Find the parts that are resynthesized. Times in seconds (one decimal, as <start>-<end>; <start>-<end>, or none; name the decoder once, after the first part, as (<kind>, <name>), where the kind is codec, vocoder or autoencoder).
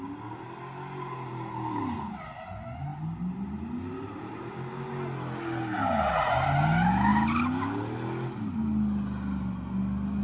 none